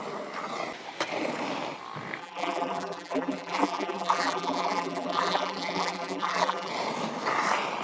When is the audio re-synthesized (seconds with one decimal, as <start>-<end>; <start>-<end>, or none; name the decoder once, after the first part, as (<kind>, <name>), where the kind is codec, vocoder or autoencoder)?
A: 2.2-6.7 (vocoder, BigVGAN v2)